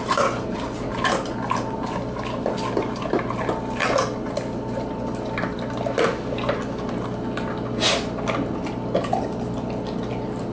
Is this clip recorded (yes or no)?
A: yes